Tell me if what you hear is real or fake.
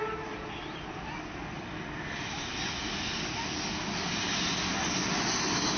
real